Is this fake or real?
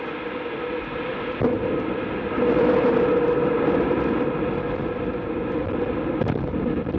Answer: real